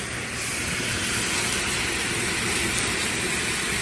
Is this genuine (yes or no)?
yes